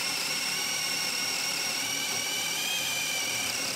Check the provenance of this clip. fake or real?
fake